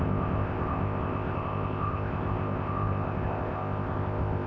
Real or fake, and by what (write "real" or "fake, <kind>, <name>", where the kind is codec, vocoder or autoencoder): fake, codec, ZipCodec